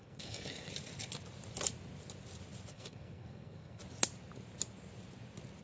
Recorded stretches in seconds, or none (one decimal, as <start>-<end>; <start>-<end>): 0.7-2.7; 3.8-5.6